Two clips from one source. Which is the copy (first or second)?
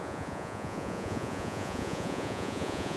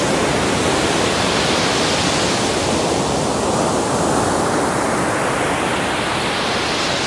first